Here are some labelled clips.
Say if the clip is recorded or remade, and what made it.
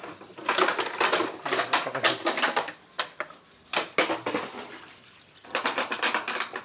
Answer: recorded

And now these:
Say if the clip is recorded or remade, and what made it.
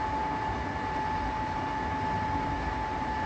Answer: recorded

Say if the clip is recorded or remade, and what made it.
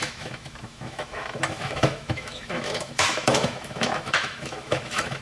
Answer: remade, autoencoder, DAC-VAE